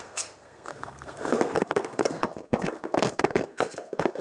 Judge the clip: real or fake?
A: fake